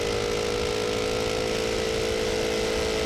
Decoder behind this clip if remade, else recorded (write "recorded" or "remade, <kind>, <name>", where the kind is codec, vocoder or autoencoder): recorded